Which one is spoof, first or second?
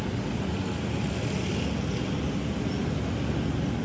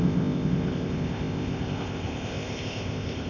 second